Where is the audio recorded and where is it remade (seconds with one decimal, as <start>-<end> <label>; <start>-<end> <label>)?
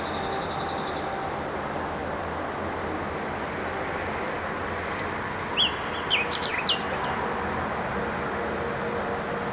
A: 0.0-9.5 recorded